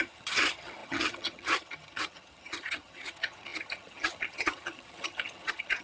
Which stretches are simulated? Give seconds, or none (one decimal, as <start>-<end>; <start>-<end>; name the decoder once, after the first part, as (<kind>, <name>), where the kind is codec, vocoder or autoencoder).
0.0-5.8 (vocoder, HiFi-GAN)